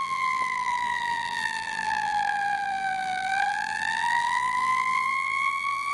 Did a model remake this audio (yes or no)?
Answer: yes